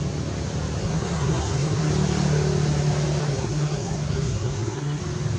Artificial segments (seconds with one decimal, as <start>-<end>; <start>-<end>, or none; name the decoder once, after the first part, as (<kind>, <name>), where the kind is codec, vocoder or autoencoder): 0.8-1.9 (codec, SNAC); 3.2-5.0